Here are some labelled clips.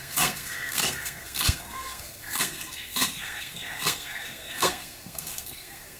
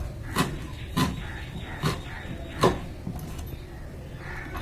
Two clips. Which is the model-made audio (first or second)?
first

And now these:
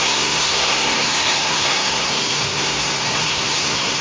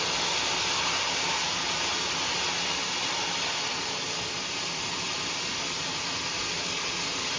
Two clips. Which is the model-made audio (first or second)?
first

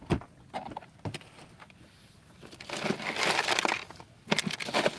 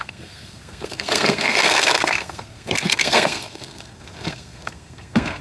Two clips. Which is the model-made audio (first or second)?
second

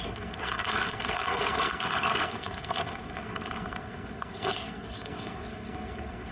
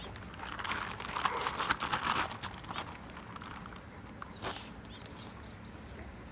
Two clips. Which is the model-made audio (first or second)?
first